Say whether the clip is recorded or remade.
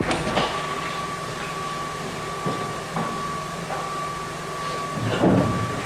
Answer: recorded